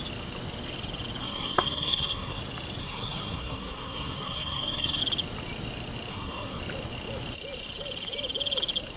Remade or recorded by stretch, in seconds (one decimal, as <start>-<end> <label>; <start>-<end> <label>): 0.0-1.2 recorded; 1.2-2.4 remade; 2.4-2.8 recorded; 2.8-5.0 remade; 5.0-6.1 recorded; 6.1-6.6 remade; 6.6-9.0 recorded